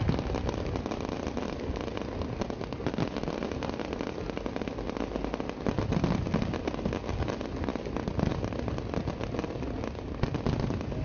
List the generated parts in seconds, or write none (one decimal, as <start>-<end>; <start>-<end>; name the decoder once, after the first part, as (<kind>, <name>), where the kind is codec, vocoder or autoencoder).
none